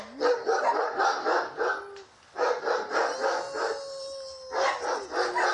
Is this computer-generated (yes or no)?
no